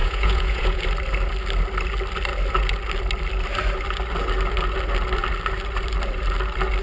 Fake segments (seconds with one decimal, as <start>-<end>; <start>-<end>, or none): 0.0-0.8